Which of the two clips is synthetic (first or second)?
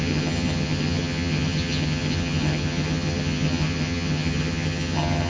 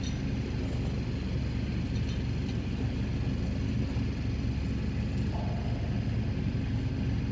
first